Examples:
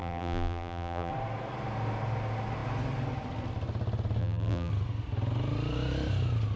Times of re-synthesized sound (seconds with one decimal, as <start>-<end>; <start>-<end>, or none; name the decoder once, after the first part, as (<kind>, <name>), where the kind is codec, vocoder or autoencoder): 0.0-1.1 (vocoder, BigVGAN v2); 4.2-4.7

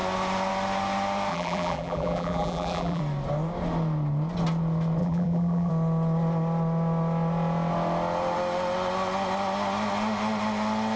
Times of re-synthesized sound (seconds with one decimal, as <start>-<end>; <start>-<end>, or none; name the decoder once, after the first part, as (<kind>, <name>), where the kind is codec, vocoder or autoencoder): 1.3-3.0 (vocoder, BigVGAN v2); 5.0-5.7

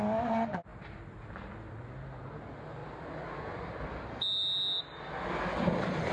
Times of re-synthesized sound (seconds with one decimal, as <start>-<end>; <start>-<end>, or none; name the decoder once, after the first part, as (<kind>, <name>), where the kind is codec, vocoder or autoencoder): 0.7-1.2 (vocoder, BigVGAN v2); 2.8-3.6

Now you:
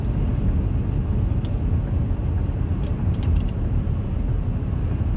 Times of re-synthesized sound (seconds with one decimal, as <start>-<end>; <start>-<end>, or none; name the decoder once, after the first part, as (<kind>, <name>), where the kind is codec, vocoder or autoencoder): 2.7-3.3 (vocoder, BigVGAN v2)

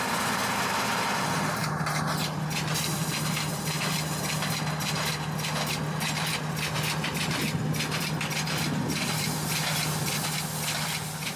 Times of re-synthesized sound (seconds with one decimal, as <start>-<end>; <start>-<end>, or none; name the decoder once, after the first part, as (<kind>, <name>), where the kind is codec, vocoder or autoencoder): 1.6-6.4 (vocoder, BigVGAN v2)